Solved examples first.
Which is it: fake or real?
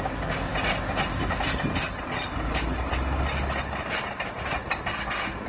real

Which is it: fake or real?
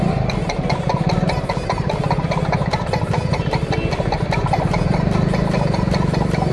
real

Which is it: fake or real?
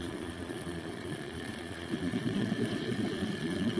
fake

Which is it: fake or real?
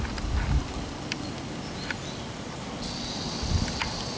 real